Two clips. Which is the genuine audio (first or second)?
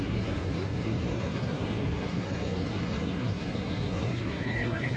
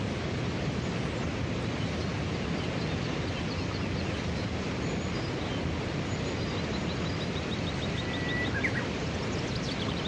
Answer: second